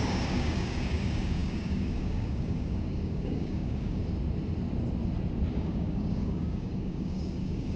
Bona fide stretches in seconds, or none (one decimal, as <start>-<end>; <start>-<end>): 4.0-5.5